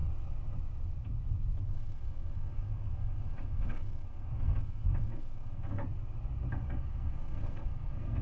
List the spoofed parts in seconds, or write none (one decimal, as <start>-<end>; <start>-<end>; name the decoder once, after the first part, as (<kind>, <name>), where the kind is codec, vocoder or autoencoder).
1.7-5.8 (codec, SNAC); 6.5-8.2